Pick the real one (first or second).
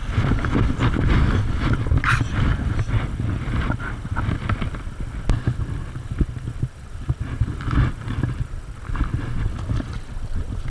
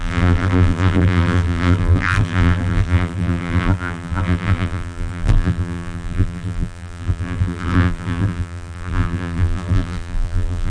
first